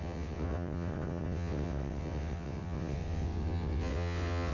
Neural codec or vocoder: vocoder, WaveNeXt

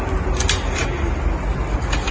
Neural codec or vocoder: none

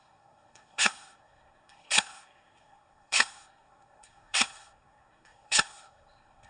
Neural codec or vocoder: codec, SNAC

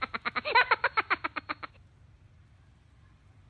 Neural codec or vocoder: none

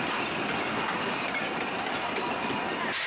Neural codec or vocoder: none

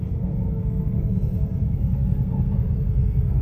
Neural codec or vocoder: codec, SNAC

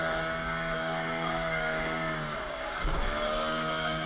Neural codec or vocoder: codec, DAC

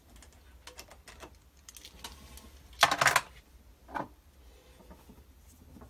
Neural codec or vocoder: none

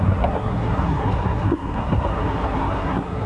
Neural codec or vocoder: codec, SNAC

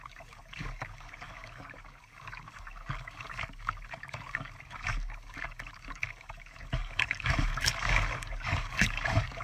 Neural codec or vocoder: codec, DAC